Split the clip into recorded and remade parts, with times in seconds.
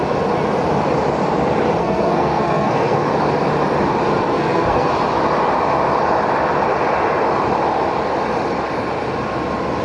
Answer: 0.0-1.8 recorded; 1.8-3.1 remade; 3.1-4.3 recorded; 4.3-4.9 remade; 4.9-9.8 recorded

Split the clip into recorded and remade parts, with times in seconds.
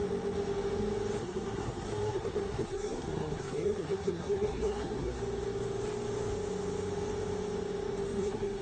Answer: 0.0-1.2 recorded; 1.2-5.2 remade; 5.2-8.2 recorded; 8.2-8.6 remade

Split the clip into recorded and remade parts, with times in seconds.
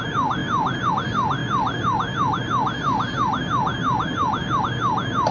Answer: 0.0-5.3 recorded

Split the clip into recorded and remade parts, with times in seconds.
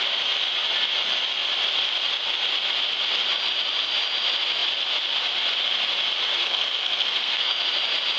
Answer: 0.0-6.4 recorded; 6.4-7.6 remade; 7.6-8.2 recorded